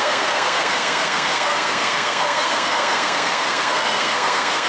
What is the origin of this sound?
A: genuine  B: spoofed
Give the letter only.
B